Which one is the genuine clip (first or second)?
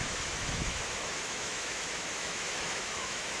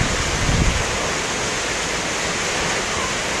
second